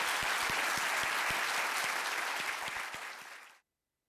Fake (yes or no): no